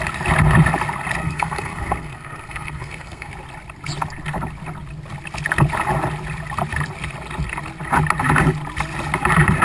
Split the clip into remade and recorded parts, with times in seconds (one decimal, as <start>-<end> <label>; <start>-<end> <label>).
0.0-1.2 recorded; 1.2-3.3 remade; 3.3-9.6 recorded